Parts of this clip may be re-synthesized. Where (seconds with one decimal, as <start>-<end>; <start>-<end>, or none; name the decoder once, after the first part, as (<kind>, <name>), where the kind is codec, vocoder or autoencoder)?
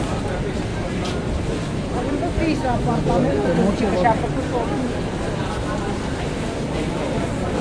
0.7-2.1 (vocoder, BigVGAN v2)